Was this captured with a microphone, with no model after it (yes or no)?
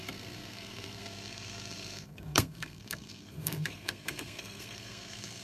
no